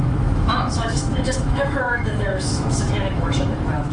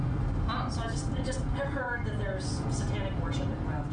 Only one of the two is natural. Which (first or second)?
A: second